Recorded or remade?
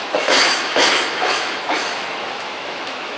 remade